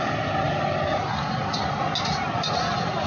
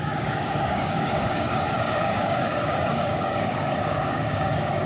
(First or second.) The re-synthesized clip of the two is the second